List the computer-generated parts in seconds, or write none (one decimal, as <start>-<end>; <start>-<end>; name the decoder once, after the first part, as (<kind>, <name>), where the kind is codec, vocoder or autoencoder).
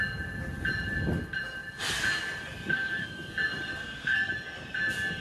2.7-3.3 (codec, SNAC); 3.7-4.3